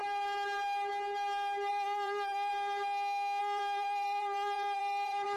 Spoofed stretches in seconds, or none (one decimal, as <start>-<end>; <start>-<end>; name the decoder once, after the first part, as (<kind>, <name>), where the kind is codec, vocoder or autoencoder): 1.7-2.5 (vocoder, BigVGAN v2); 3.4-5.4

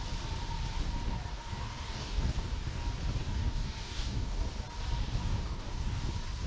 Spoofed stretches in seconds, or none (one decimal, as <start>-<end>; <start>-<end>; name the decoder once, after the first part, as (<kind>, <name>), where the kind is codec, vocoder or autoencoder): 1.3-2.8 (codec, DAC); 3.2-4.4; 5.2-6.1

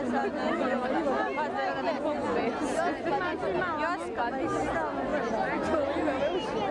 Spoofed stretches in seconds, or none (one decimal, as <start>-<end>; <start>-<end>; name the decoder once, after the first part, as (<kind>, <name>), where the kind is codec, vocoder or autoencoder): none

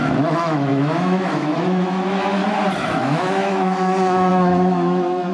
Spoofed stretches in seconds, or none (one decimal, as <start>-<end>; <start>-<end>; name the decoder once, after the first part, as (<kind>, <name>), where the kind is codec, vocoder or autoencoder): 0.0-2.4 (autoencoder, DAC-VAE); 2.9-5.3

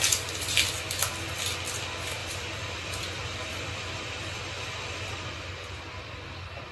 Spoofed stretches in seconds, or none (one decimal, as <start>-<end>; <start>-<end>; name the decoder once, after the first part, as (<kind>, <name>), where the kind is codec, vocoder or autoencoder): 2.2-6.1 (vocoder, BigVGAN v2)

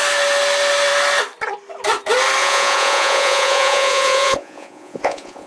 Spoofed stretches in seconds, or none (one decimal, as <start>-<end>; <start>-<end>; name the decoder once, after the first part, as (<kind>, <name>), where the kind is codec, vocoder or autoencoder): 2.4-5.5 (vocoder, Vocos)

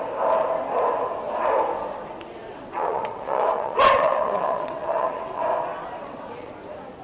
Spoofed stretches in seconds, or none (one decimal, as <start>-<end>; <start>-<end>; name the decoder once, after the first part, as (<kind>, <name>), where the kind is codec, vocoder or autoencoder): 2.4-5.4 (vocoder, WaveNeXt); 6.0-6.5

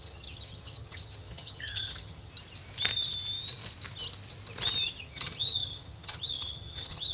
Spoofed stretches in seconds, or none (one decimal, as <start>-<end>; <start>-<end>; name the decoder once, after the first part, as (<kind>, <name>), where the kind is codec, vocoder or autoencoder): 0.0-2.3 (vocoder, HiFi-GAN); 5.0-7.1